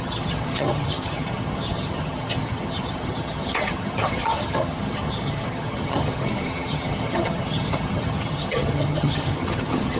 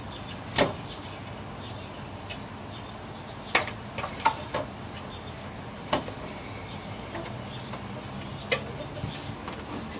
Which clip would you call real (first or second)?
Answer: second